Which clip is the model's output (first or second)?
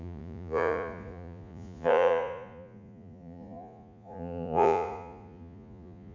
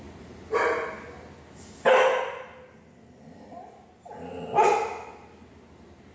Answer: first